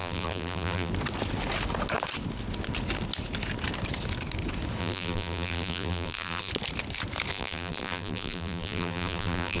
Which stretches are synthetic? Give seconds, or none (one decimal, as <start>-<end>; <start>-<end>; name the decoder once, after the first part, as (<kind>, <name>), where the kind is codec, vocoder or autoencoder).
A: 0.0-0.9 (vocoder, BigVGAN v2); 4.8-6.5; 7.3-9.6